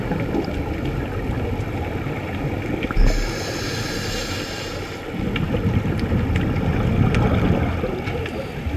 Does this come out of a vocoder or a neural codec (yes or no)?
no